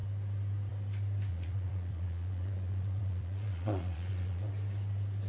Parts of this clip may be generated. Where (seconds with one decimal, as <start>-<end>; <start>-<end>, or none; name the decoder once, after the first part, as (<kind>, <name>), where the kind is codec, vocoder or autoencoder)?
1.3-4.5 (vocoder, Vocos)